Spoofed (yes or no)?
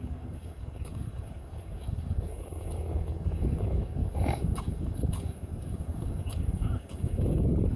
yes